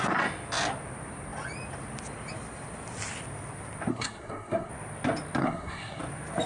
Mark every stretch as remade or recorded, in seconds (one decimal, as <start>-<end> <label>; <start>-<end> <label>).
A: 0.0-3.9 recorded; 3.9-4.7 remade; 4.7-5.4 recorded; 5.4-6.0 remade; 6.0-6.5 recorded